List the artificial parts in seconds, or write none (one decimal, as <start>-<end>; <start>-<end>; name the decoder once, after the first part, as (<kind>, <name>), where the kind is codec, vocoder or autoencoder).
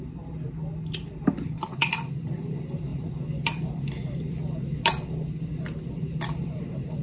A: none